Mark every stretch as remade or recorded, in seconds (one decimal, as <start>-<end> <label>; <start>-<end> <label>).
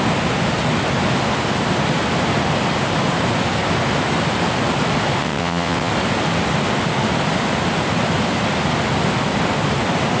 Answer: 0.0-5.2 recorded; 5.2-5.9 remade; 5.9-10.2 recorded